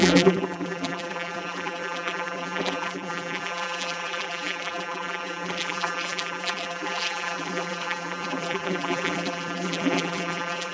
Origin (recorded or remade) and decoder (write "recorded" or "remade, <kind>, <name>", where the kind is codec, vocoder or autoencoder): remade, vocoder, BigVGAN v2